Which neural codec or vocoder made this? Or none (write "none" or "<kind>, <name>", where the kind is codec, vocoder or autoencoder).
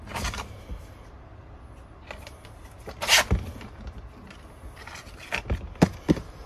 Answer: none